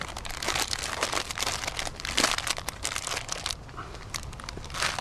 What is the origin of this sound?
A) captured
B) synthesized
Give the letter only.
A